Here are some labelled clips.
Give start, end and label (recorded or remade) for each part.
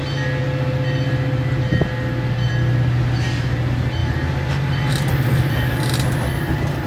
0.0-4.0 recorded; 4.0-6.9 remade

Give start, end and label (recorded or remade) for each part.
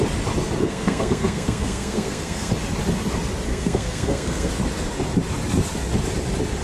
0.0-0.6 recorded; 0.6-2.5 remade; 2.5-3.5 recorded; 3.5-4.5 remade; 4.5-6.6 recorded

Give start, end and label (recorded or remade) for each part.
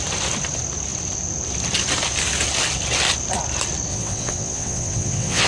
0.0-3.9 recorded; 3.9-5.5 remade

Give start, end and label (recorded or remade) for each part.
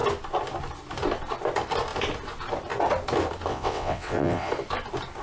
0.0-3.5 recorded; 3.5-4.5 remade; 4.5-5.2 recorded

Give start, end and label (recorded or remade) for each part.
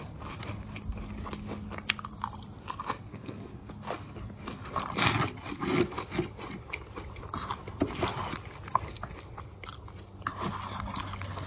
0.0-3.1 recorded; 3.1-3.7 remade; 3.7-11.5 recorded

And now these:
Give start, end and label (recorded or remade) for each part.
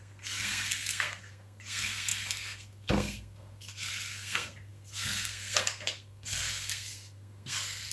0.0-7.9 remade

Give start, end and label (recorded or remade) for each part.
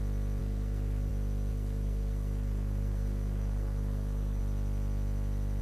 0.0-0.4 recorded; 0.4-1.1 remade; 1.1-1.5 recorded; 1.5-4.4 remade; 4.4-5.6 recorded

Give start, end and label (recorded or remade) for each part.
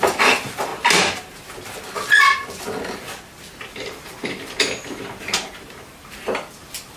0.0-0.7 remade; 0.7-3.7 recorded; 3.7-7.0 remade